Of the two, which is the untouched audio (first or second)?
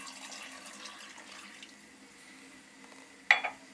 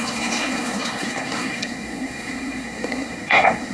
first